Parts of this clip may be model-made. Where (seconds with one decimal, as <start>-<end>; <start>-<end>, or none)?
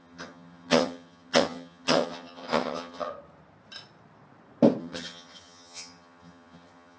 0.0-3.1; 4.8-7.0